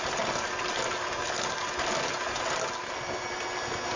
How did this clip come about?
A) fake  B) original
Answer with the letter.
B